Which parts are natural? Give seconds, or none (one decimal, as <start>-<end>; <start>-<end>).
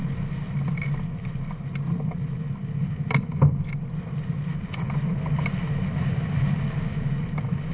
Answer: 0.0-7.7